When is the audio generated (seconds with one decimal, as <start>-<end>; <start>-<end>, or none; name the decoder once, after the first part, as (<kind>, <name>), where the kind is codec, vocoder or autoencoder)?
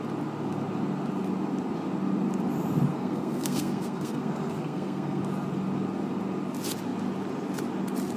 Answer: 2.9-5.2 (codec, SNAC)